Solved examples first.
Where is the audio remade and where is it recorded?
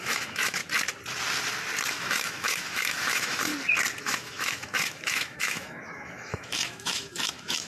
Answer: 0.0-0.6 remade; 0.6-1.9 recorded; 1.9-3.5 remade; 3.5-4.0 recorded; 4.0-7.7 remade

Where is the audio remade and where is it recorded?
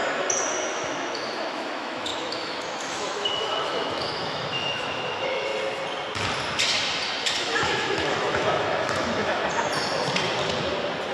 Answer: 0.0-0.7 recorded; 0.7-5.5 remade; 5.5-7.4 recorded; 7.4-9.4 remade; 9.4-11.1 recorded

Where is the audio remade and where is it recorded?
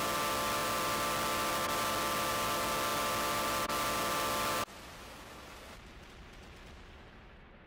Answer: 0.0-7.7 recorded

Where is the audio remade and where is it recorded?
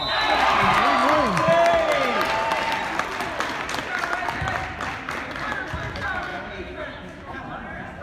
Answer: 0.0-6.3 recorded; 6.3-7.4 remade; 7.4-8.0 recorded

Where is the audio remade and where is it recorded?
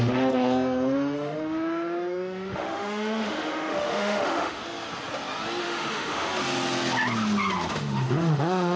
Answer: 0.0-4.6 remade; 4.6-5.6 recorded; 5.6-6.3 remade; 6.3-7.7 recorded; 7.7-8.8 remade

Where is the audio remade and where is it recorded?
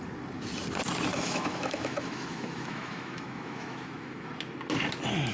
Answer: 0.0-1.1 recorded; 1.1-4.3 remade; 4.3-5.3 recorded